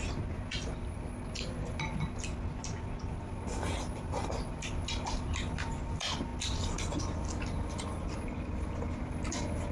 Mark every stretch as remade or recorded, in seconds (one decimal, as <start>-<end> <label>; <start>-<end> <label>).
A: 0.0-9.7 recorded